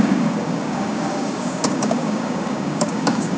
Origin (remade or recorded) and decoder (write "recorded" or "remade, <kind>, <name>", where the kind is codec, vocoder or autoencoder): remade, codec, DAC